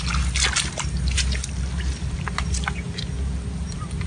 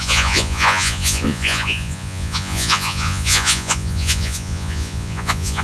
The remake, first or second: second